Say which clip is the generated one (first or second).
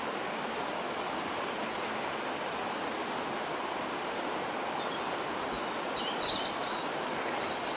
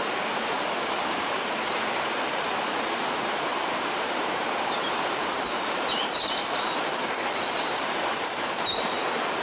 second